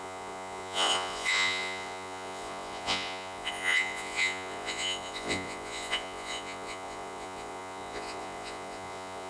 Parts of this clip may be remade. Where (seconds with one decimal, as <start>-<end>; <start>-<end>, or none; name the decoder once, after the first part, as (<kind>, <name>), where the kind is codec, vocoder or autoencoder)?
0.0-9.3 (vocoder, Vocos)